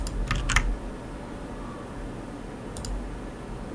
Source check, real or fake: real